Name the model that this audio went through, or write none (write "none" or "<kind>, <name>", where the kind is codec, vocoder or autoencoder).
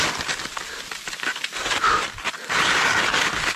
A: none